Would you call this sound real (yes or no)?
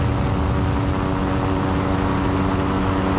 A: yes